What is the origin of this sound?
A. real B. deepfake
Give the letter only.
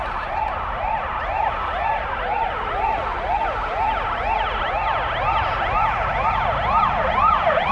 A